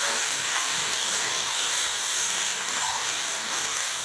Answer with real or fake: fake